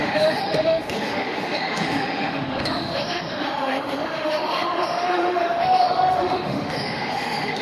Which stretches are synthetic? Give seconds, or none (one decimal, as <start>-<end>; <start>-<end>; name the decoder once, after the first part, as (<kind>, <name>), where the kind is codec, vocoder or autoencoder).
0.0-7.6 (autoencoder, DAC-VAE)